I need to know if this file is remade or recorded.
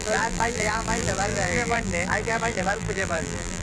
remade